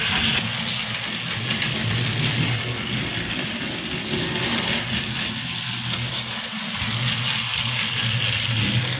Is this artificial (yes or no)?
no